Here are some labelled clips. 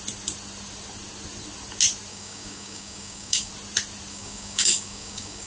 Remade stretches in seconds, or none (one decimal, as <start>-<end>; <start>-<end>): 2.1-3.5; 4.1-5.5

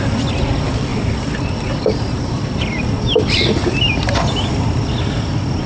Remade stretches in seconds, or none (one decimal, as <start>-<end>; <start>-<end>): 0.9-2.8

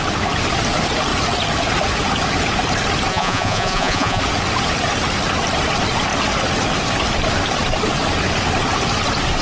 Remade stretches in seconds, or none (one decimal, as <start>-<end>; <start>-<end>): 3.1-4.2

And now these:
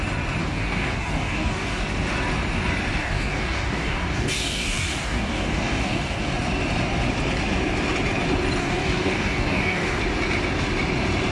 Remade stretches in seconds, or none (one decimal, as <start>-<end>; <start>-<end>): 0.4-1.8; 3.0-6.3; 8.6-10.0